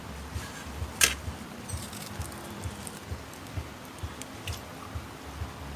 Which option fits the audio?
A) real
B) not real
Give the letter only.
A